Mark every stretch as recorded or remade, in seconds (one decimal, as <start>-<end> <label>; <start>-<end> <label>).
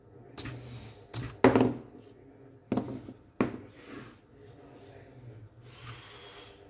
0.0-6.7 recorded